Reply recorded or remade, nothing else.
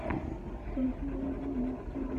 recorded